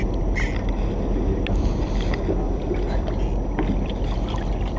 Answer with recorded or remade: recorded